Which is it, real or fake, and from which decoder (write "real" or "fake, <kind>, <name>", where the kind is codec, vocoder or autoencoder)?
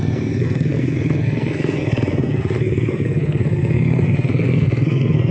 fake, codec, SNAC